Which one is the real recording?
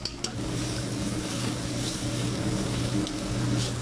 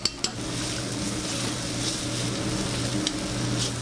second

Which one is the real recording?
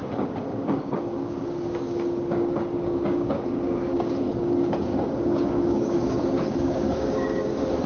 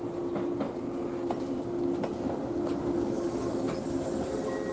second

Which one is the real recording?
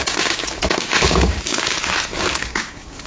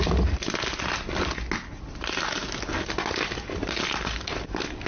second